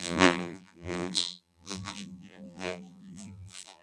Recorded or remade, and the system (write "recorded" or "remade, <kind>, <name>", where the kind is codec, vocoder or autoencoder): remade, vocoder, BigVGAN v2